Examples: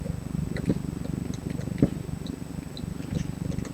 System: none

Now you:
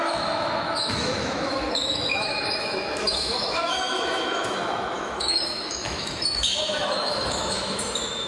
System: autoencoder, DAC-VAE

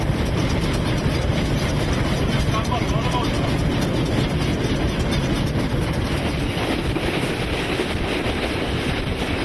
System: none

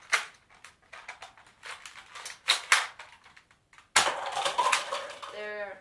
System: none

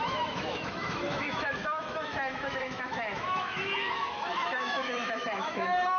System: autoencoder, DAC-VAE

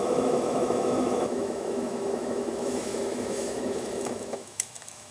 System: autoencoder, DAC-VAE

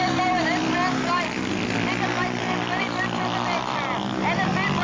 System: none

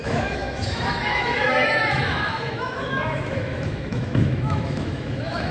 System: autoencoder, DAC-VAE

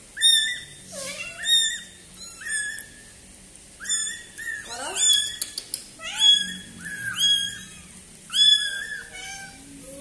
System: none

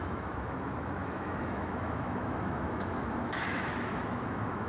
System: autoencoder, DAC-VAE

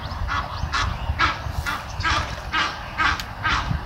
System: none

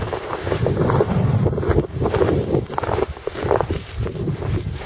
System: none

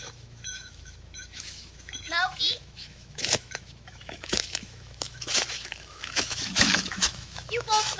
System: autoencoder, DAC-VAE